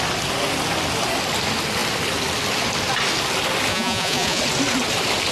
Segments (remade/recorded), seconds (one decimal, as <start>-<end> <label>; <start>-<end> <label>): 0.0-3.7 recorded; 3.7-4.4 remade; 4.4-5.3 recorded